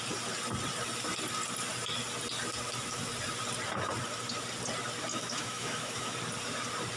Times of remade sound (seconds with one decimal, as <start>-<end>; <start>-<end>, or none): 5.1-6.1